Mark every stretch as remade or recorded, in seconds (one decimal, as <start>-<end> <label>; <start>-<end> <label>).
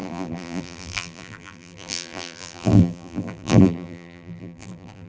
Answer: 0.0-5.1 remade